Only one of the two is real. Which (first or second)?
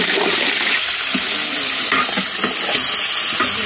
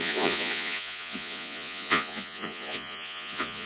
first